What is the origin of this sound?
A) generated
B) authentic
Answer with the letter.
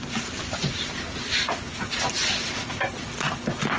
B